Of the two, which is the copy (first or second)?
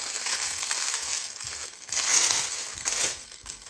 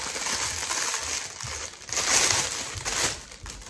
first